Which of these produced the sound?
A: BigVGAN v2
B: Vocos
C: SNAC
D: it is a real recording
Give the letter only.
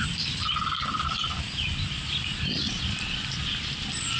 D